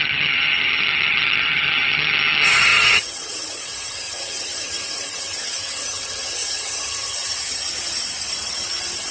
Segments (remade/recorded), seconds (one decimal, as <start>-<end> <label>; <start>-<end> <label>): 0.0-9.1 remade